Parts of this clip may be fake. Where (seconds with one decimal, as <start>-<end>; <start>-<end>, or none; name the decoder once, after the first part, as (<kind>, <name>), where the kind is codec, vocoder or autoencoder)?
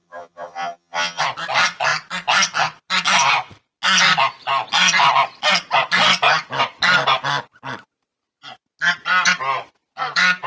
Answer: 0.0-1.2 (vocoder, HiFi-GAN)